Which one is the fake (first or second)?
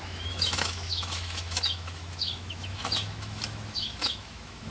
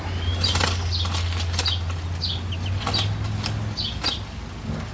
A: first